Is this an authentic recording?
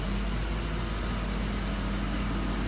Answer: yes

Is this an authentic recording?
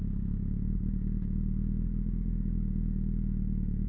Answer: no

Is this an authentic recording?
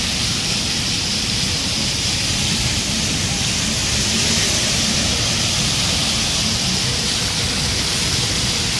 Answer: yes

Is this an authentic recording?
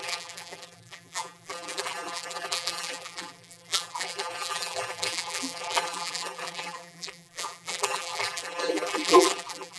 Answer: no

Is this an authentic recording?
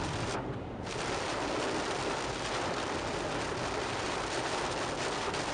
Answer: yes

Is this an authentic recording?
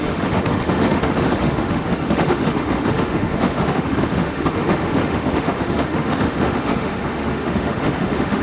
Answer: no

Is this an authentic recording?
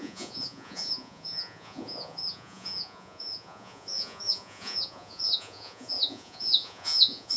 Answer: no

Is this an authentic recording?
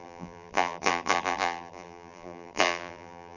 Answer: no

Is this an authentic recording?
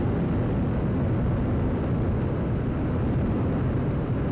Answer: yes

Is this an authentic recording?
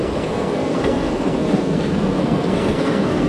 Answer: no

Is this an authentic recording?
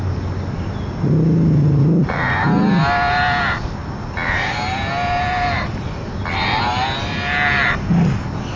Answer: yes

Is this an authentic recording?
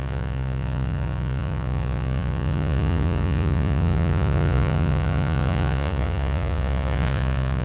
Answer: no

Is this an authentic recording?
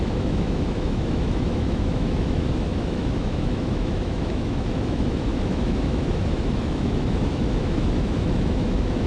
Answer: no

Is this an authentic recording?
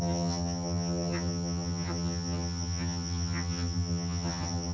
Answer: no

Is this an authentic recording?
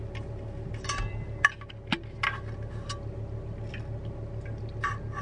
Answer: yes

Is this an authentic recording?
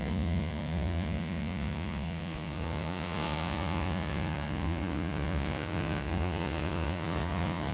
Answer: no